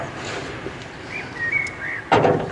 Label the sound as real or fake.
real